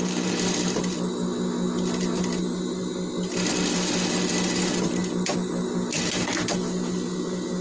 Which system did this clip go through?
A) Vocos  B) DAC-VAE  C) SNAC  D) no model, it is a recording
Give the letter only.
D